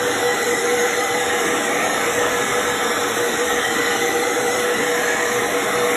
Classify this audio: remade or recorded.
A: remade